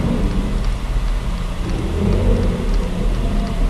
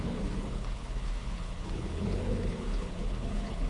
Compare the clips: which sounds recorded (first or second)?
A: first